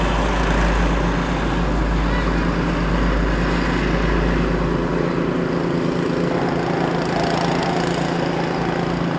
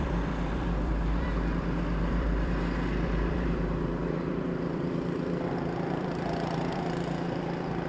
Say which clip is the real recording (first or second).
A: first